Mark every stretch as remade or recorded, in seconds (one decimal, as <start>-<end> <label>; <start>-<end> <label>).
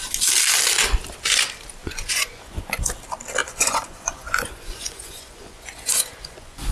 0.0-1.8 recorded; 1.8-2.9 remade; 2.9-3.4 recorded; 3.4-6.7 remade